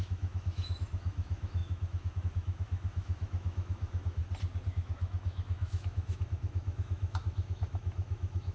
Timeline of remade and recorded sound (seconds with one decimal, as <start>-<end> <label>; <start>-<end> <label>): 0.0-4.2 remade; 4.2-4.7 recorded; 4.7-8.5 remade